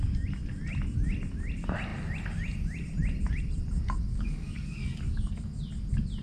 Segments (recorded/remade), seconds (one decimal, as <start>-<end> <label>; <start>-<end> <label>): 0.0-4.1 recorded; 4.1-5.3 remade; 5.3-6.2 recorded